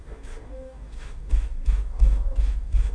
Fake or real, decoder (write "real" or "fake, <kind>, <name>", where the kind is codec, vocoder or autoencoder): fake, codec, DAC